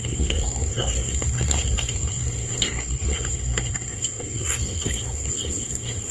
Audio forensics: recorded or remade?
remade